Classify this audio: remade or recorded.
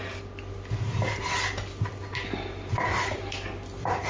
recorded